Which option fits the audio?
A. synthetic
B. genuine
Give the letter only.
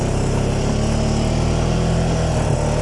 B